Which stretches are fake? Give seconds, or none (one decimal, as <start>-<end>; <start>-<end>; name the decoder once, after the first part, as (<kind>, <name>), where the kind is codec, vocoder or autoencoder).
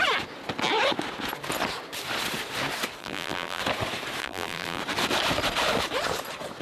3.0-3.6 (vocoder, BigVGAN v2); 4.2-4.8